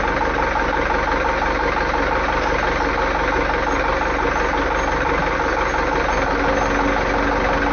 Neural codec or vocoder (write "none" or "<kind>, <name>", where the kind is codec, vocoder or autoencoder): none